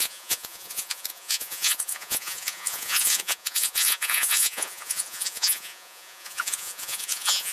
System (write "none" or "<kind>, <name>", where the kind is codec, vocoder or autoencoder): vocoder, Vocos